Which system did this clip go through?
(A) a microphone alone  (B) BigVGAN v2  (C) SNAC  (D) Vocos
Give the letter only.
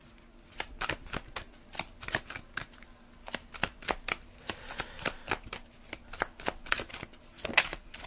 A